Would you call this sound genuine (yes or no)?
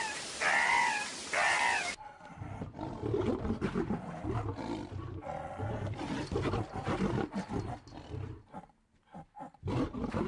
yes